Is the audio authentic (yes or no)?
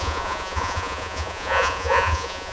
no